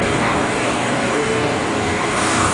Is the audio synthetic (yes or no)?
yes